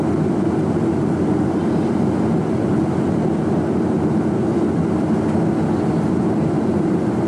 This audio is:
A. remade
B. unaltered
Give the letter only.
B